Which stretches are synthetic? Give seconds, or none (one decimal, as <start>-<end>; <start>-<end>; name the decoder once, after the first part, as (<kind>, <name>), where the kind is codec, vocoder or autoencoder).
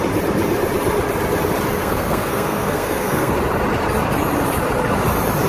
1.8-3.3 (codec, SNAC)